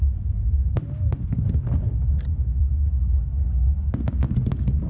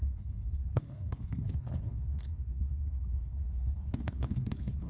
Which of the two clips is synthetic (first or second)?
second